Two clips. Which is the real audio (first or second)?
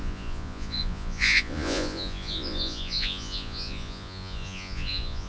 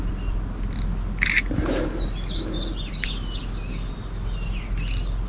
second